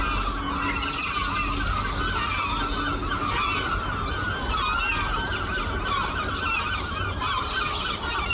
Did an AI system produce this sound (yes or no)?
no